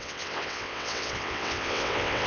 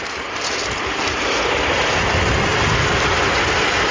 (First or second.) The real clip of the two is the second